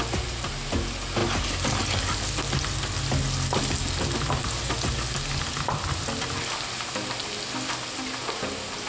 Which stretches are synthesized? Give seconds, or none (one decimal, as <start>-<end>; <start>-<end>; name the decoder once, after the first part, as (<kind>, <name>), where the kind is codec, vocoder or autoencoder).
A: none